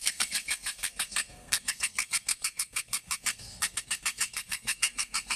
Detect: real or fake fake